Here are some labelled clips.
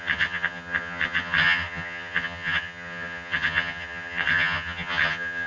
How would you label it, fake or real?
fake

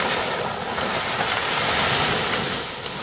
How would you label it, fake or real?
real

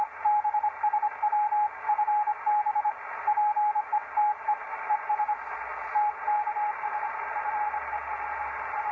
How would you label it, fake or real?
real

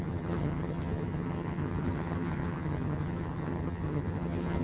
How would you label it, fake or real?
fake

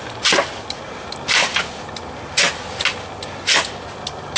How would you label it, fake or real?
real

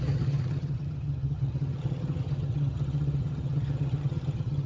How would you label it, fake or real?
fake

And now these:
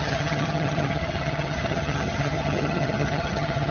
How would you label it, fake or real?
fake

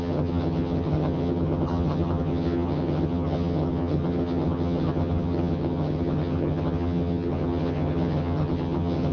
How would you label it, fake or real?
fake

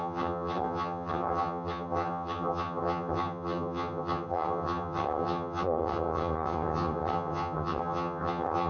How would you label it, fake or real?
fake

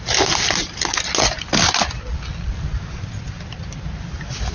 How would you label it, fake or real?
real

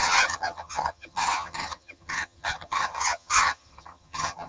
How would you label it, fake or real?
fake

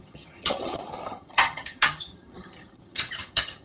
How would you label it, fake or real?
fake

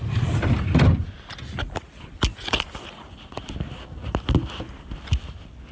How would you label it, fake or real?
real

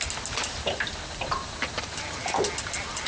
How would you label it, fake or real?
real